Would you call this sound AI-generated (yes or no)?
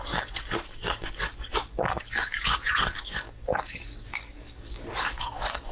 yes